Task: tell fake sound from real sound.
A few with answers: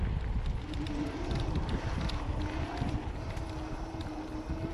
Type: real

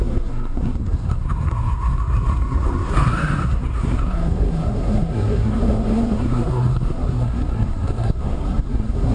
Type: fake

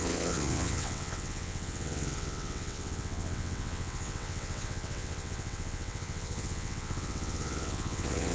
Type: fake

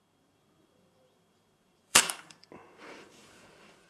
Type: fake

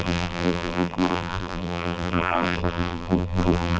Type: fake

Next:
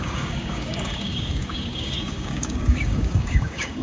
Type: fake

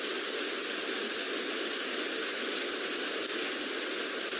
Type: real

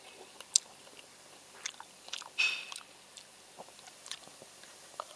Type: fake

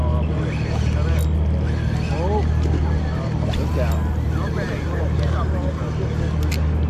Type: real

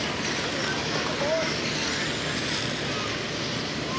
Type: real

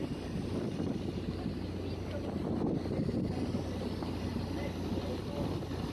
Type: real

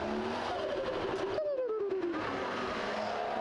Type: real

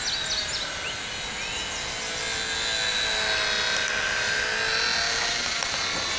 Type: real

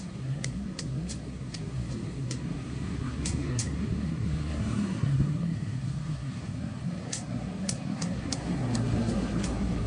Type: fake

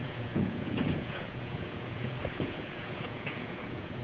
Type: fake